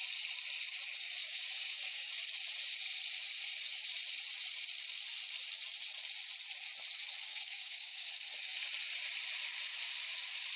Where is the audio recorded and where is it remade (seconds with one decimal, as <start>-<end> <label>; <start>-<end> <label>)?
0.0-1.2 recorded; 1.2-2.1 remade; 2.1-7.3 recorded; 7.3-8.1 remade; 8.1-10.6 recorded